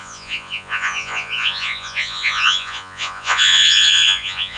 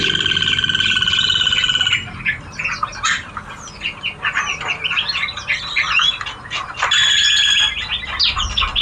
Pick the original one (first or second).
second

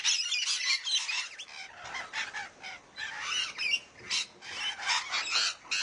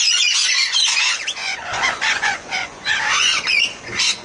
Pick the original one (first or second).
first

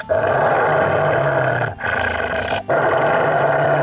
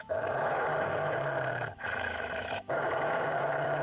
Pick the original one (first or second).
first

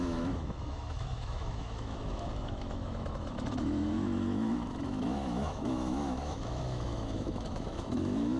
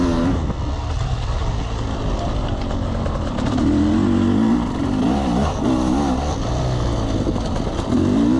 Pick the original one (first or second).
second